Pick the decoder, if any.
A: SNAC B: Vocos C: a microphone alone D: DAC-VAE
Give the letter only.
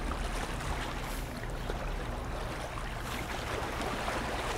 C